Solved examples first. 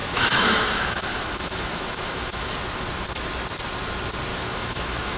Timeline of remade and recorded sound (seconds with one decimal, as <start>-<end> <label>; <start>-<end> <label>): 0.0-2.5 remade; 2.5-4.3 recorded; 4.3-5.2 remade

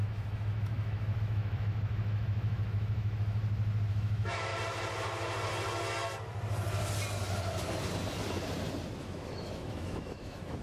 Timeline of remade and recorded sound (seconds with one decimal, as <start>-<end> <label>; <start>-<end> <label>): 0.0-3.4 remade; 3.4-3.9 recorded; 3.9-4.5 remade; 4.5-9.0 recorded; 9.0-10.6 remade

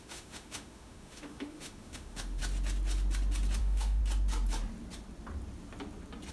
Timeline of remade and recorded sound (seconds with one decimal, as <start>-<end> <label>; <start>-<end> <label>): 0.0-2.4 remade; 2.4-3.6 recorded; 3.6-4.0 remade; 4.0-6.3 recorded

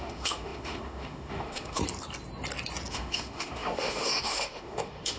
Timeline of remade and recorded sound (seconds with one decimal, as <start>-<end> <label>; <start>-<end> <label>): 0.0-1.8 remade; 1.8-2.9 recorded; 2.9-5.2 remade

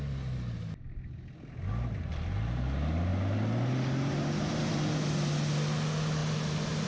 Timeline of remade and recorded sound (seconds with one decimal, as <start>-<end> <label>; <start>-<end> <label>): 0.0-6.9 recorded